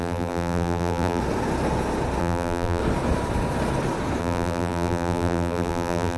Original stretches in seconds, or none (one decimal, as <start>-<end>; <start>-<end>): 1.2-2.2; 2.8-4.2